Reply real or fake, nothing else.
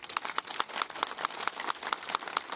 real